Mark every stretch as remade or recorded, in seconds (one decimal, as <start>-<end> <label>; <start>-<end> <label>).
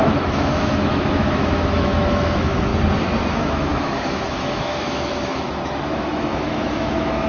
0.0-2.7 remade; 2.7-3.3 recorded; 3.3-7.3 remade